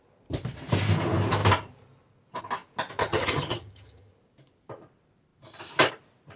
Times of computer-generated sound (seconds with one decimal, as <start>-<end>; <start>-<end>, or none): 3.0-4.1